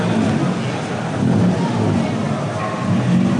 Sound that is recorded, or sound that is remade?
recorded